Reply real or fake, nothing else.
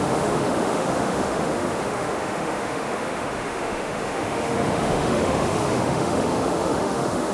fake